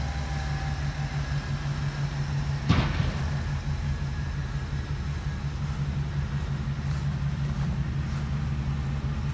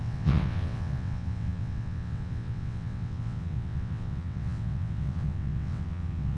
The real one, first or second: first